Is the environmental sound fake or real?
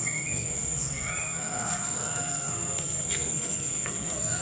fake